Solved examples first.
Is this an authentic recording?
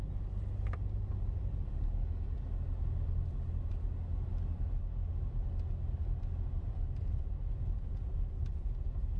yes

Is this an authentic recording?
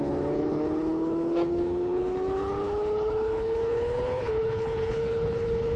no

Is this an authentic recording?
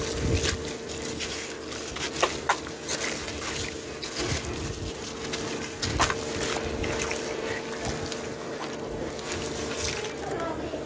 yes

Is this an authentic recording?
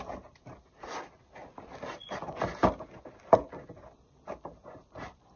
yes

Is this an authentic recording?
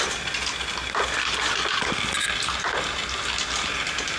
yes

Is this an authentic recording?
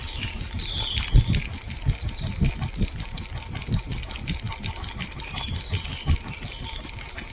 yes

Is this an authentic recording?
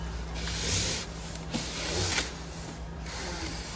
yes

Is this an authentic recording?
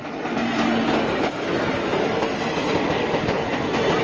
yes